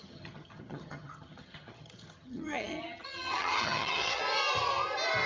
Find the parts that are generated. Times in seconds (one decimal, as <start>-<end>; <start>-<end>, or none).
0.0-4.2